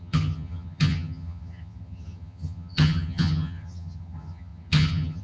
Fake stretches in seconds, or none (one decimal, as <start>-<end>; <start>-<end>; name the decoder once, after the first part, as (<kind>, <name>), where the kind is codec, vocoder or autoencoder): 0.0-5.2 (vocoder, HiFi-GAN)